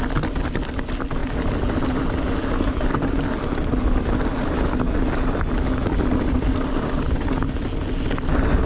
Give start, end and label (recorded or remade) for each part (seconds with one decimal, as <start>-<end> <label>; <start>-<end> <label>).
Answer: 0.0-8.7 recorded